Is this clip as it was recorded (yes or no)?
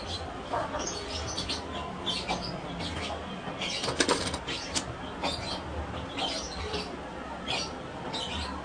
yes